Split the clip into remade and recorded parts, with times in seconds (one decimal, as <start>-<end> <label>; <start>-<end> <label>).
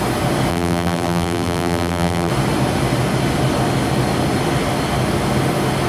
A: 0.0-0.5 recorded; 0.5-2.3 remade; 2.3-5.9 recorded